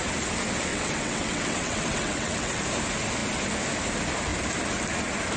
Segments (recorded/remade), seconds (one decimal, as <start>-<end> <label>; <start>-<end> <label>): 0.0-0.7 recorded; 0.7-2.6 remade; 2.6-5.4 recorded